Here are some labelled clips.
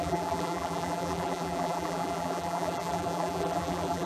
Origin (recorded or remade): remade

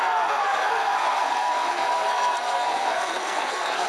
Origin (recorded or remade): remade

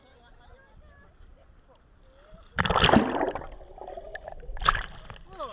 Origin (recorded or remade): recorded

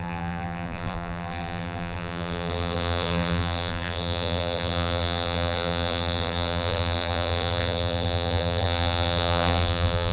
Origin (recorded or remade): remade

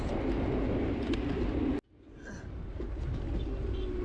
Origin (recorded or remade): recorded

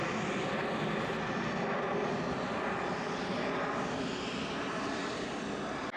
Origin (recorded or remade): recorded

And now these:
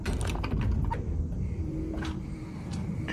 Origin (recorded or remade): remade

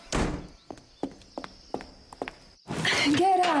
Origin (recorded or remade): recorded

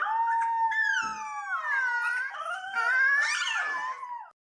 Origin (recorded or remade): recorded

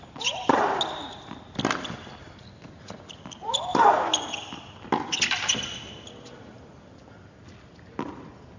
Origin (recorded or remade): recorded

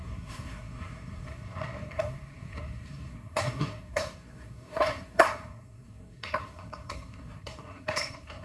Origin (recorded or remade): remade